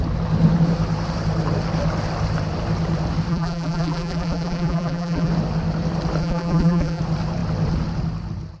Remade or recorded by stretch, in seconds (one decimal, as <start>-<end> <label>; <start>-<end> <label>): 0.0-3.3 recorded; 3.3-5.3 remade; 5.3-6.2 recorded; 6.2-7.0 remade; 7.0-8.6 recorded